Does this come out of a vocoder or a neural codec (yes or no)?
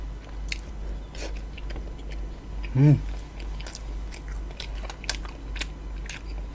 no